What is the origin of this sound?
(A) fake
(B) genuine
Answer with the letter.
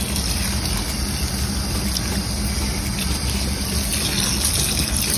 B